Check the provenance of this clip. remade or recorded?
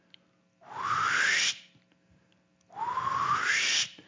recorded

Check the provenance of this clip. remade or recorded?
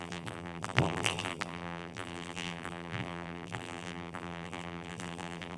remade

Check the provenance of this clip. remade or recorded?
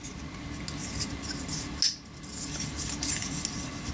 recorded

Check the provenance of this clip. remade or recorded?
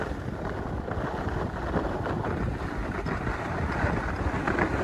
recorded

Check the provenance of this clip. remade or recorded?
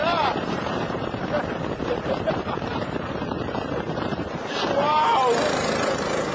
remade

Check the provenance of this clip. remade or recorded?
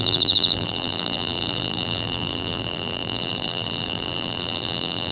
remade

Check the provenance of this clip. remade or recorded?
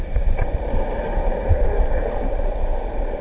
remade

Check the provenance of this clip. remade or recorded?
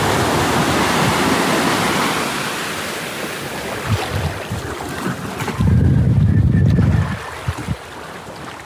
recorded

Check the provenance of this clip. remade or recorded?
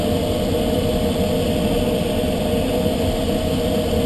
recorded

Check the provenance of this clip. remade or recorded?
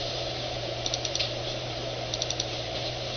remade